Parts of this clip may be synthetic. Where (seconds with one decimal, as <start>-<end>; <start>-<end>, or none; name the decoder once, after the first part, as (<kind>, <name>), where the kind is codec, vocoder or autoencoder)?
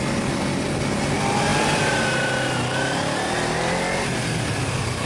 none